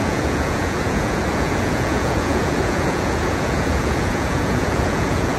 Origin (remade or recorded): remade